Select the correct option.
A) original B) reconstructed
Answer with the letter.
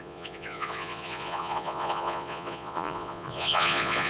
B